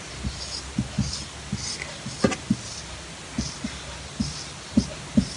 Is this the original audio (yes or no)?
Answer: yes